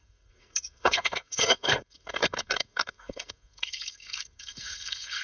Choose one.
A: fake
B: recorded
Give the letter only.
A